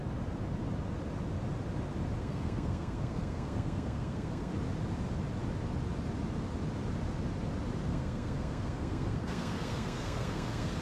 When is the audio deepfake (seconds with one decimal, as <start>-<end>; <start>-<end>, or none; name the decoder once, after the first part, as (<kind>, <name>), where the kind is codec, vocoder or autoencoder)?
2.2-4.5 (codec, SNAC); 7.9-10.8